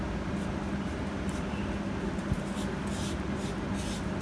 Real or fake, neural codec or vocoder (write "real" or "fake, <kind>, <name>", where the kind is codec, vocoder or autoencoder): real